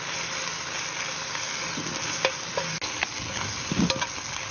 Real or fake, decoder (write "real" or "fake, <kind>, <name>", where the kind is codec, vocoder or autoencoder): real